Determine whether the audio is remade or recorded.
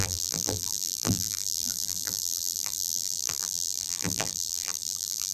remade